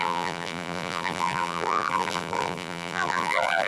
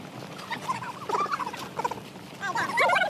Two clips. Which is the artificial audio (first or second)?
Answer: first